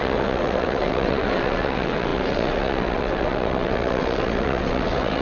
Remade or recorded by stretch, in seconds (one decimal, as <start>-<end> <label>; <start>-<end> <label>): 0.0-5.2 remade